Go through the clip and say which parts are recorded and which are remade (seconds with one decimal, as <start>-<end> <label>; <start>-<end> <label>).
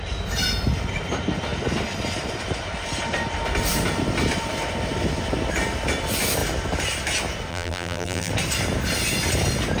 0.0-7.5 recorded; 7.5-8.3 remade; 8.3-9.8 recorded